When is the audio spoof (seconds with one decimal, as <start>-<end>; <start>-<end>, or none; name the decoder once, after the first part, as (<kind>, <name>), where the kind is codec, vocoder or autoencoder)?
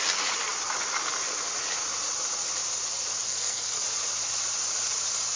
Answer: 3.2-3.8 (codec, SNAC)